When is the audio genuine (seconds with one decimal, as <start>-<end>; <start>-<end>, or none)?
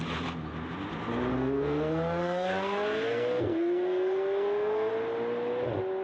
0.0-1.3; 4.9-6.0